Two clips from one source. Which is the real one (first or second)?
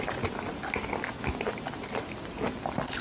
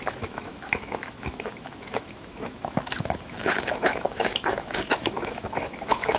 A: first